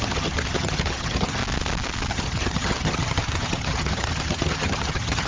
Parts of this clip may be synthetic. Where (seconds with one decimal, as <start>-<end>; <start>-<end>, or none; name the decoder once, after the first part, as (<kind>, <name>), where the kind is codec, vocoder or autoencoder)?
0.0-1.4 (vocoder, HiFi-GAN); 2.1-5.3